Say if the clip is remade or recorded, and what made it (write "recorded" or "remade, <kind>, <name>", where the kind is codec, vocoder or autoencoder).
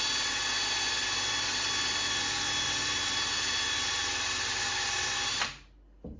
recorded